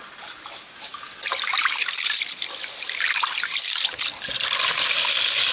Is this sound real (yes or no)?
yes